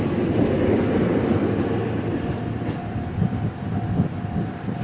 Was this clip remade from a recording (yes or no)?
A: no